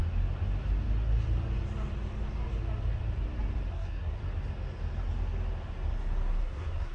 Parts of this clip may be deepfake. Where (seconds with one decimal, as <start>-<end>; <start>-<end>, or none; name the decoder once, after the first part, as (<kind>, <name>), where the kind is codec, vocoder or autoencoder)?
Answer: 3.7-4.2 (codec, SNAC); 6.4-6.9